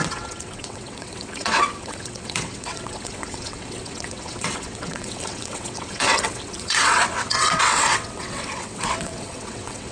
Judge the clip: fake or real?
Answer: fake